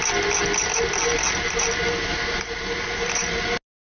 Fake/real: real